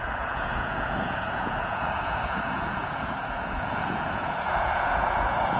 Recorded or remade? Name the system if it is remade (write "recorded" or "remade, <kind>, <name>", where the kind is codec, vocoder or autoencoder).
remade, vocoder, Vocos